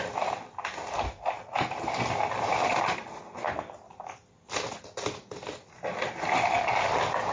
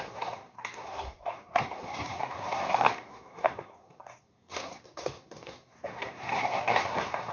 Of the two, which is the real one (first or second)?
first